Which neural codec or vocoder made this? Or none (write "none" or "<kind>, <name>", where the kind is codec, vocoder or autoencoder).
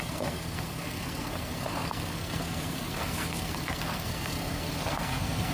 codec, SNAC